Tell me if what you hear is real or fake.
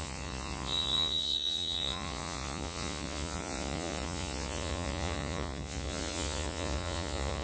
fake